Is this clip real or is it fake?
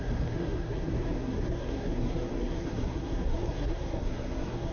fake